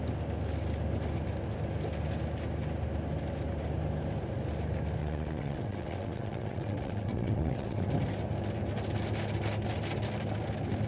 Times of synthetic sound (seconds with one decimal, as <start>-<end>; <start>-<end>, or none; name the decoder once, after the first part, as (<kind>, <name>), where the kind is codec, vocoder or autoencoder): 5.0-7.9 (vocoder, WaveNeXt)